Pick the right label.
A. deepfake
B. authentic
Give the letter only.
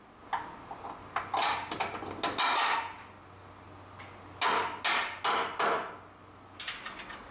B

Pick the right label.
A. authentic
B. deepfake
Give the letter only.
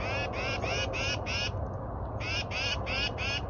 A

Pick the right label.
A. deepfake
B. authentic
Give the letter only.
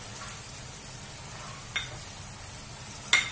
B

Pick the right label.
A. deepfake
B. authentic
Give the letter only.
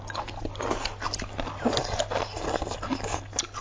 B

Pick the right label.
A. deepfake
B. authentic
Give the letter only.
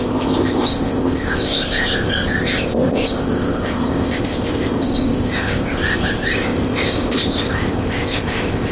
A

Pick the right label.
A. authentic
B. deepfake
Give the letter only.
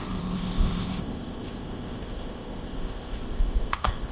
B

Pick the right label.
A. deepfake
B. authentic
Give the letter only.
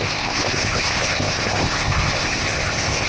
A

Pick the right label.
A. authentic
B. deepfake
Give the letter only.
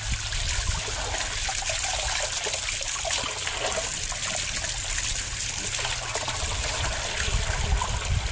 A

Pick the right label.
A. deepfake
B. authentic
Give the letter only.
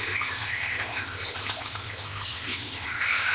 A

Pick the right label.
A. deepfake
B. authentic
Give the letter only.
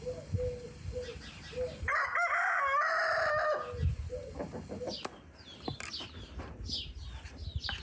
B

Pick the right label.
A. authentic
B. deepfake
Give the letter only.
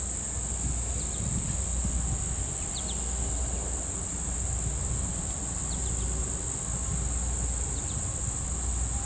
A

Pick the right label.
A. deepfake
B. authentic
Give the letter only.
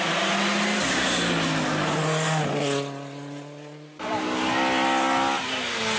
B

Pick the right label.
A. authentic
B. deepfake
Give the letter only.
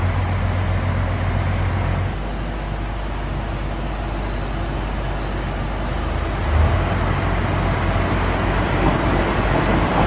A